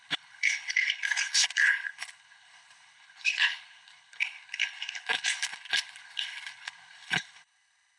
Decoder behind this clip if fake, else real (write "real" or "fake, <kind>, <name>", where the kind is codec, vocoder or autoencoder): fake, codec, HILCodec